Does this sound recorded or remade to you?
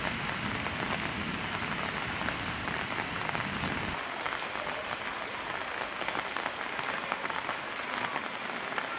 recorded